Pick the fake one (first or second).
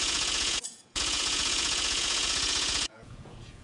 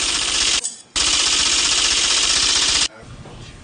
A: first